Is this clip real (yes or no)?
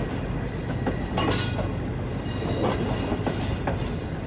yes